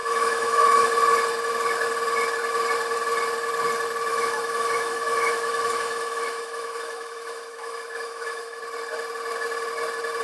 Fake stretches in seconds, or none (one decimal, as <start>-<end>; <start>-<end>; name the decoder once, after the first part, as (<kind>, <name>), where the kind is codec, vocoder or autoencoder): 0.0-0.9 (autoencoder, DAC-VAE); 4.1-8.6